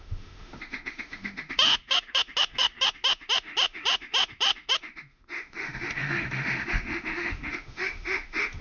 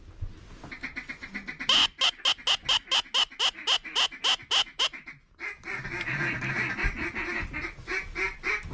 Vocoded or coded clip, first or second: first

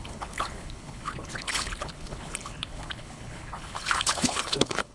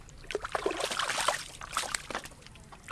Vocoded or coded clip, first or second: first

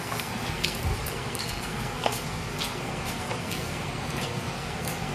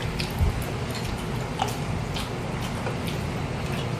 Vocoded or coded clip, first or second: first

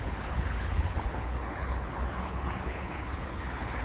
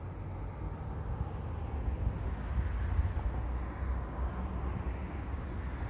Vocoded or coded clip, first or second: first